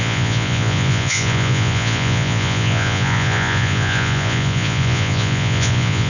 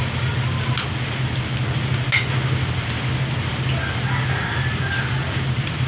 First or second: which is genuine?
second